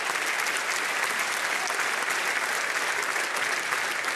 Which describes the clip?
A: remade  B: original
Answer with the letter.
B